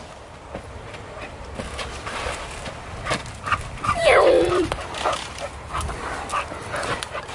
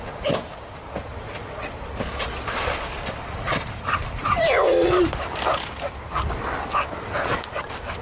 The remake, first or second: first